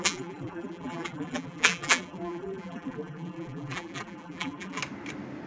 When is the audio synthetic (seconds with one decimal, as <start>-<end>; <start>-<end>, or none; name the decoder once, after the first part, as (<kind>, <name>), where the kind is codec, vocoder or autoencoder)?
0.0-4.8 (vocoder, BigVGAN v2)